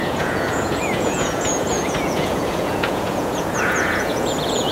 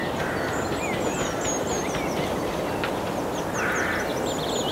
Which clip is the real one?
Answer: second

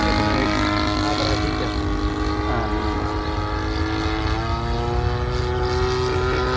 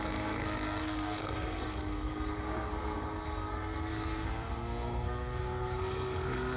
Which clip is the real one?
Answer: first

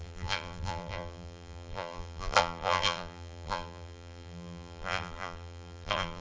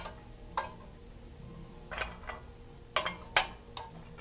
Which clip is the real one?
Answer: second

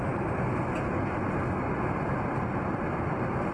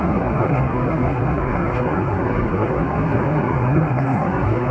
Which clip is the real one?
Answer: first